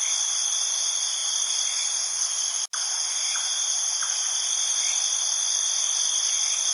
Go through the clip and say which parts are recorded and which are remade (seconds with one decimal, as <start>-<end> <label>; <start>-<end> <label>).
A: 0.0-6.7 recorded